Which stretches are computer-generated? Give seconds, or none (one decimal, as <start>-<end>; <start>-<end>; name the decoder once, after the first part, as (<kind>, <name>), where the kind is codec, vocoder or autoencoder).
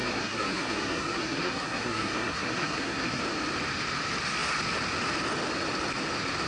0.0-3.2 (codec, SNAC)